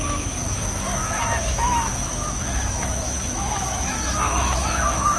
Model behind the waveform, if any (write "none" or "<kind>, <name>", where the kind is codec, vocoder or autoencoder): autoencoder, DAC-VAE